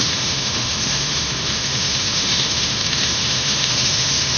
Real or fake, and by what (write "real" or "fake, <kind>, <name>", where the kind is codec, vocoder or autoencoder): fake, autoencoder, DAC-VAE